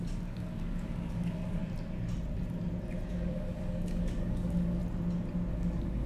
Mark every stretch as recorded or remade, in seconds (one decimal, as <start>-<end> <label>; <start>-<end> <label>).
0.0-1.6 remade; 1.6-3.1 recorded; 3.1-4.8 remade; 4.8-5.5 recorded; 5.5-6.1 remade